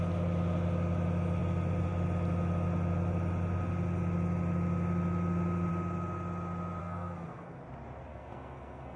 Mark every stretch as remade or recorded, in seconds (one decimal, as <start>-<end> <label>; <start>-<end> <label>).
0.0-6.8 recorded; 6.8-7.6 remade; 7.6-8.1 recorded; 8.1-9.0 remade